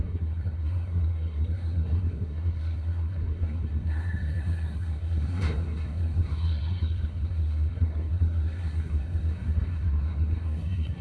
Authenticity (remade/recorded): remade